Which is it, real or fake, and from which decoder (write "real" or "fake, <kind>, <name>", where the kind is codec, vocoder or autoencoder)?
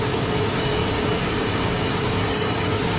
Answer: fake, codec, DAC